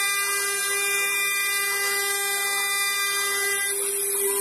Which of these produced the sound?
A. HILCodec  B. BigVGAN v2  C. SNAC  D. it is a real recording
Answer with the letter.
D